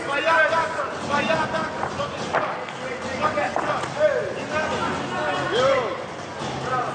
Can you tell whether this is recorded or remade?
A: recorded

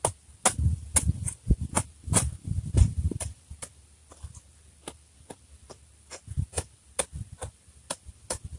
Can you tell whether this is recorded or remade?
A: recorded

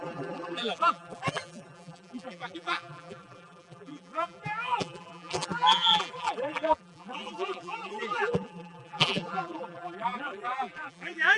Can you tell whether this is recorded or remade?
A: remade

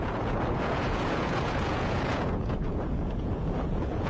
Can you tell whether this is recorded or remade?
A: remade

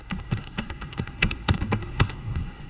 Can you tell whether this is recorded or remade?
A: remade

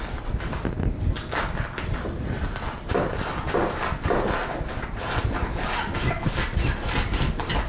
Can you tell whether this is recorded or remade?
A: recorded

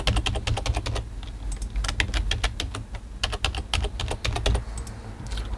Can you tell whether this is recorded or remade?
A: recorded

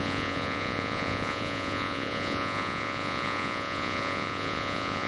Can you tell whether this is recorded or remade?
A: remade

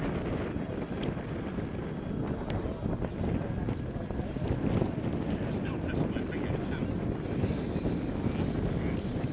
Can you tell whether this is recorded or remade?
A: recorded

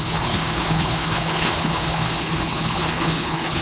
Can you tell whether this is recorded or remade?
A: remade